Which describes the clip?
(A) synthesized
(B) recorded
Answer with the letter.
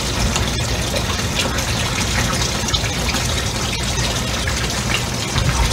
B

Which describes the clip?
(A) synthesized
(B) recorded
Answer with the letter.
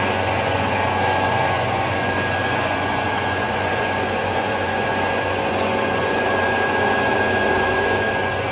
A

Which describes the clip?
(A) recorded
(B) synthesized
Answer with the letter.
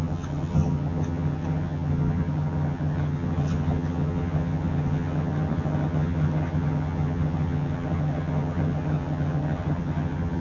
B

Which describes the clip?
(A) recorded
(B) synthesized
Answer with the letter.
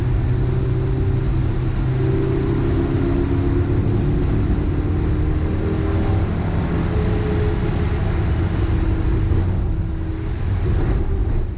A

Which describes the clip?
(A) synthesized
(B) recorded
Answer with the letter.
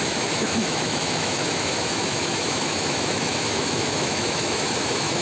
A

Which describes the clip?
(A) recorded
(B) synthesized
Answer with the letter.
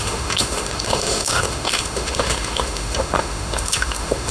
B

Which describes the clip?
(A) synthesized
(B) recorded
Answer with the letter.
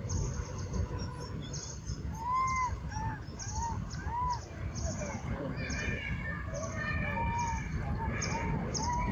B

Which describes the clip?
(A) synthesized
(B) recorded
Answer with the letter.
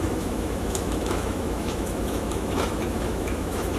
A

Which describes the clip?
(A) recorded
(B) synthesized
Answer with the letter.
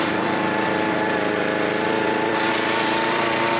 B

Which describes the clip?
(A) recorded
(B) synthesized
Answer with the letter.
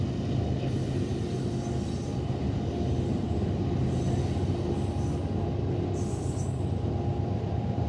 A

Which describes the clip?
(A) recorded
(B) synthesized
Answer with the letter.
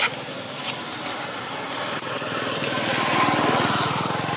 A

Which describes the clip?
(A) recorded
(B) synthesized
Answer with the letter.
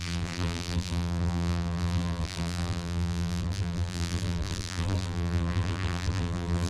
B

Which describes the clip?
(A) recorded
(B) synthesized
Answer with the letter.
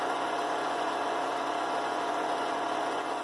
B